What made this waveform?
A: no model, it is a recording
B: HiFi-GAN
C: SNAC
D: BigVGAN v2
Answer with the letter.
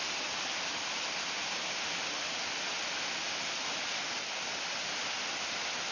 A